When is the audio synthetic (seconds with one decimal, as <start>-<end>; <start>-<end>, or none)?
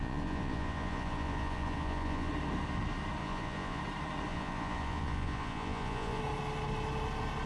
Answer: 0.0-2.3; 3.2-3.8; 4.3-6.2